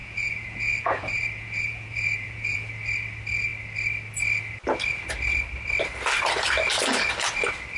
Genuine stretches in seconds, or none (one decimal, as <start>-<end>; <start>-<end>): 2.8-7.8